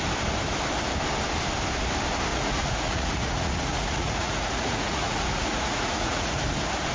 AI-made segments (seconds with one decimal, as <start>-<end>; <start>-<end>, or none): 2.3-6.4